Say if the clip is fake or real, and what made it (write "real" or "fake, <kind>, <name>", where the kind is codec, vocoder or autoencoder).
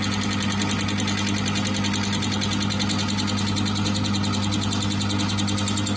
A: real